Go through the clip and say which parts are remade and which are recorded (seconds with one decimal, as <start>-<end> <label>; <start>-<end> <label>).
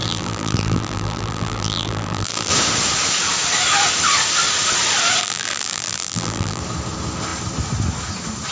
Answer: 0.0-2.5 remade; 2.5-5.2 recorded; 5.2-6.6 remade; 6.6-8.5 recorded